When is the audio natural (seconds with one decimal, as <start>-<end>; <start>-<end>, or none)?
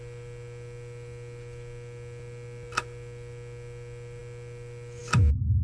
0.0-5.6